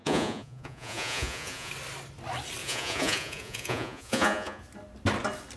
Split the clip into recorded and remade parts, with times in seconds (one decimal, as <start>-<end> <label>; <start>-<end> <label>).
0.0-1.7 remade; 1.7-2.6 recorded; 2.6-4.6 remade; 4.6-5.6 recorded